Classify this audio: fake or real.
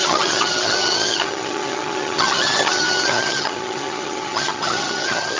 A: fake